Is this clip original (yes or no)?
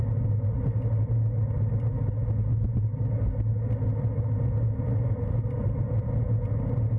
yes